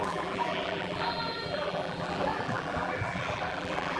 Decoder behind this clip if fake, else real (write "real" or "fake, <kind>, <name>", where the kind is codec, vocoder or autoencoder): fake, vocoder, BigVGAN v2